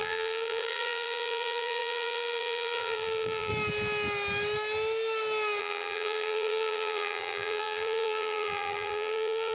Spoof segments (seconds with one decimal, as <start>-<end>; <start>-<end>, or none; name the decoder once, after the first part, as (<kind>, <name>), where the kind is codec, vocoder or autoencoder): 0.0-3.5 (vocoder, BigVGAN v2); 5.6-9.5